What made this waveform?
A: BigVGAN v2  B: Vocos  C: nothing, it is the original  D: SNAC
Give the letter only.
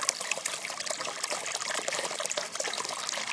C